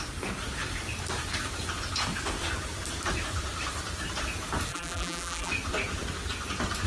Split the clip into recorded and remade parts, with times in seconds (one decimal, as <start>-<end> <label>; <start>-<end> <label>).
0.0-4.7 recorded; 4.7-5.5 remade; 5.5-6.9 recorded

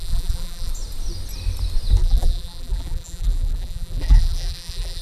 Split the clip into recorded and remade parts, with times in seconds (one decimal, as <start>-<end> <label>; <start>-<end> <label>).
0.0-0.7 remade; 0.7-2.0 recorded; 2.0-5.0 remade

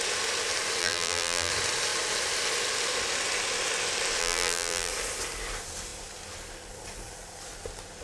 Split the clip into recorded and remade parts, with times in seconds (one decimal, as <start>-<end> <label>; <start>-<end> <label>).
0.0-0.8 recorded; 0.8-1.5 remade; 1.5-4.2 recorded; 4.2-4.9 remade; 4.9-8.0 recorded